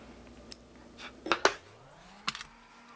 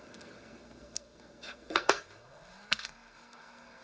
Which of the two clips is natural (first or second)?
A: first